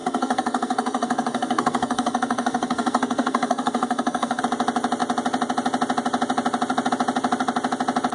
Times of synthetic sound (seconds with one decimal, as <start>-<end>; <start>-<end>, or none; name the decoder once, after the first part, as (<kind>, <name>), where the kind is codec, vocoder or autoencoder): 0.0-4.4 (codec, SNAC)